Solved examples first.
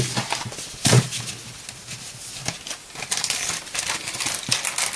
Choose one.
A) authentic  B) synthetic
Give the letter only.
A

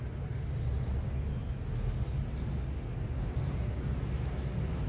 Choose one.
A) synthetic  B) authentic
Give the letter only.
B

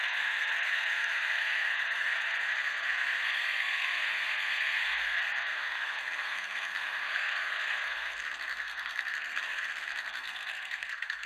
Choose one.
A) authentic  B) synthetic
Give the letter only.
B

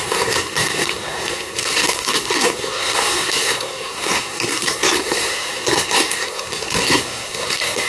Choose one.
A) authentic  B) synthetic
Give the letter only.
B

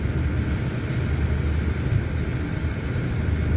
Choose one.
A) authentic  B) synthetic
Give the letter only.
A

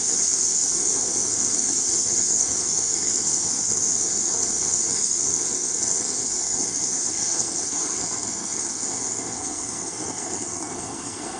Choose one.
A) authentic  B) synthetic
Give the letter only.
B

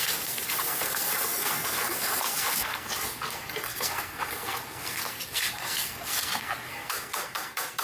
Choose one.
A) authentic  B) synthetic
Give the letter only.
B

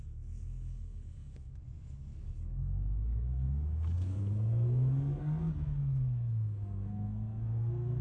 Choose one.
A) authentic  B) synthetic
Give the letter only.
B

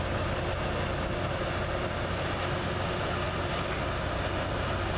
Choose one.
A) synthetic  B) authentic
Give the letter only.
B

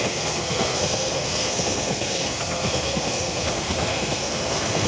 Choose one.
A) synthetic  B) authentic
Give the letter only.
A